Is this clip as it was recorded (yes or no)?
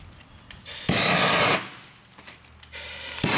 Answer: yes